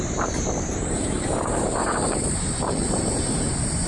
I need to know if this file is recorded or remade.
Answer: remade